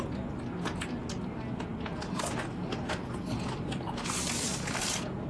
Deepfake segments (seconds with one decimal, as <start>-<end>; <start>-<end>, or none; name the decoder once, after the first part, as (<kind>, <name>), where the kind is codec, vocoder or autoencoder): none